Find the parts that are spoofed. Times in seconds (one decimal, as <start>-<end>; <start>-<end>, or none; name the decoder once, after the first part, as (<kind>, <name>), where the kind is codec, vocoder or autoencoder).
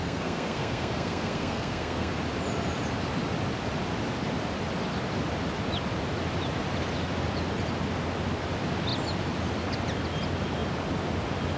0.0-2.1 (codec, SNAC)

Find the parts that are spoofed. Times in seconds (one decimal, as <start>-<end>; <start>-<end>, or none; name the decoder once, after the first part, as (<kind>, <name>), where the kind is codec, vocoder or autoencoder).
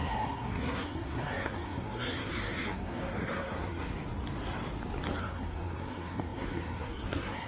0.0-3.9 (codec, SNAC); 5.2-7.5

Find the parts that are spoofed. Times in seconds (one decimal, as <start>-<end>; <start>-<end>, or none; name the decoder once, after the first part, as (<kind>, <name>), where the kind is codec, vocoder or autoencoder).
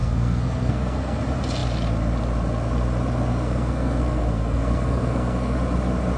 0.0-1.2 (codec, SNAC); 3.3-5.6